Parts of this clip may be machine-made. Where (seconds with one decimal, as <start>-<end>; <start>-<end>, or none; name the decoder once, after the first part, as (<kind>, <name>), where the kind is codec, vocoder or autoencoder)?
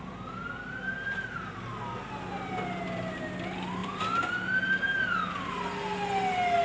none